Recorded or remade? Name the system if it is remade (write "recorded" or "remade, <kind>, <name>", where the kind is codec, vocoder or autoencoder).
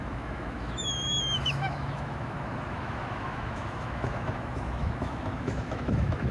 remade, autoencoder, DAC-VAE